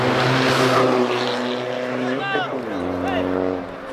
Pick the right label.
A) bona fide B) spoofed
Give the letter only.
A